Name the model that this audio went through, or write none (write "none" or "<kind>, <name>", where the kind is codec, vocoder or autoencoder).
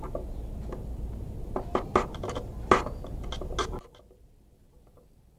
none